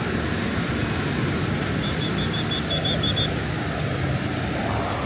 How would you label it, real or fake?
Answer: real